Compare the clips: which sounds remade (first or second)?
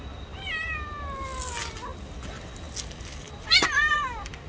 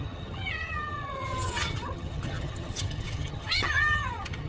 second